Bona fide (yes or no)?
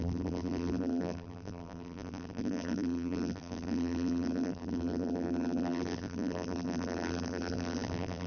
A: no